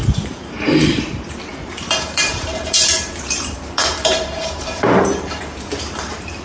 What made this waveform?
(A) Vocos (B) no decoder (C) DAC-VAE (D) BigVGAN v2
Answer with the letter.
D